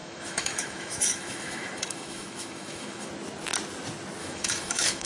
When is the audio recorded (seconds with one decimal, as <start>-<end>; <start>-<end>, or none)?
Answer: 3.1-4.2